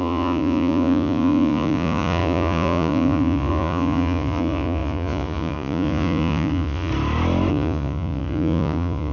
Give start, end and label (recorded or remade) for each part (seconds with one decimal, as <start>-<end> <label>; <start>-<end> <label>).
0.0-6.9 remade; 6.9-7.5 recorded; 7.5-9.1 remade